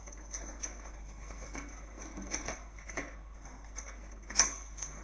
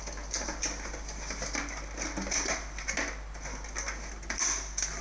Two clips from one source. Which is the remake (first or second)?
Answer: first